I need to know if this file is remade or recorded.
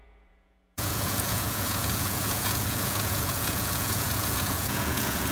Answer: remade